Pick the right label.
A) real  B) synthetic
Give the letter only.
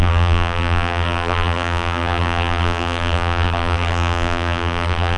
B